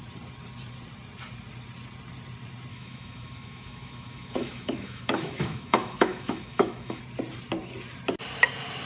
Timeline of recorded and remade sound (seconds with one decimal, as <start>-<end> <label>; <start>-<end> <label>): 0.0-2.7 recorded; 2.7-7.0 remade; 7.0-8.9 recorded